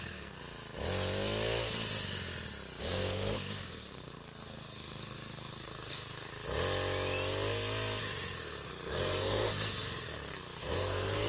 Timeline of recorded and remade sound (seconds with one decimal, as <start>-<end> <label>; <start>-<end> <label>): 0.0-0.4 remade; 0.4-2.8 recorded; 2.8-6.3 remade; 6.3-8.0 recorded; 8.0-11.3 remade